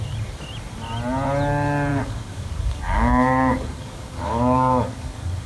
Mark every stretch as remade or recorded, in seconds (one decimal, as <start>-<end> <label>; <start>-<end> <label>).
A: 0.0-1.9 recorded; 1.9-5.5 remade